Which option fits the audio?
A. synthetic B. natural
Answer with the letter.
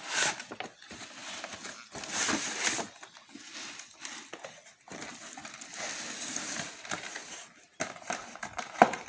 B